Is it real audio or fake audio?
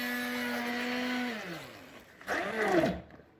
real